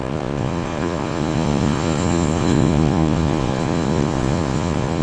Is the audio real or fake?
fake